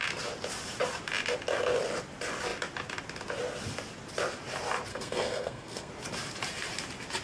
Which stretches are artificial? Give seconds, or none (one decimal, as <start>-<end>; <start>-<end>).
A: 4.9-5.9